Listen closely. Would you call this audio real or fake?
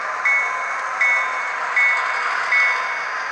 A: real